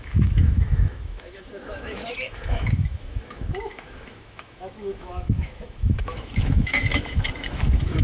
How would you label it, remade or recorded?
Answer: remade